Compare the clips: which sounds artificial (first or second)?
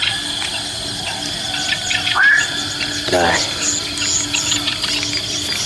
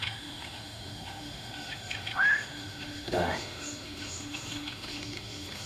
second